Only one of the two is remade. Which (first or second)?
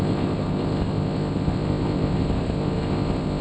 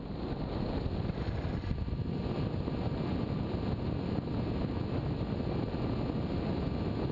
first